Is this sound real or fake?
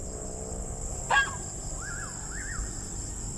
real